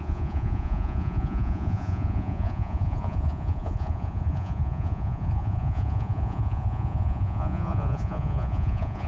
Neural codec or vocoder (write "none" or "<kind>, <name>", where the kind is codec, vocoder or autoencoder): vocoder, Vocos